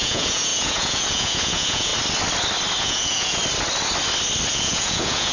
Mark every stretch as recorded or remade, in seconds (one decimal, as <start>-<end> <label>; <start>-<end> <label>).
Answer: 0.0-1.9 remade; 1.9-2.8 recorded; 2.8-3.4 remade; 3.4-4.5 recorded; 4.5-5.3 remade